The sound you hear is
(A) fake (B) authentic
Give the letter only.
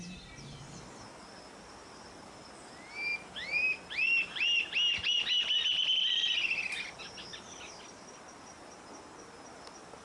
B